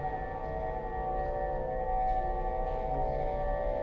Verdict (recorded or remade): recorded